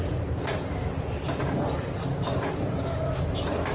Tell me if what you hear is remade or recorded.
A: recorded